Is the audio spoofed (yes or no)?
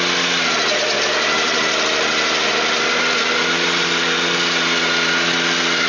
no